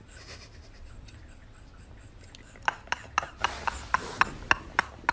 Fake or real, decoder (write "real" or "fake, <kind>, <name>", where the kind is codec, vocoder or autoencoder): real